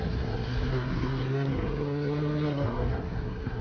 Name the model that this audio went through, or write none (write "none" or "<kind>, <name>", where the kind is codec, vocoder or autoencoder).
codec, SNAC